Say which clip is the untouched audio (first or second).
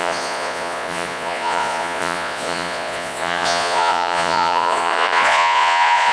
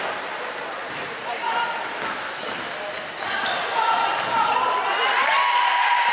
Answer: second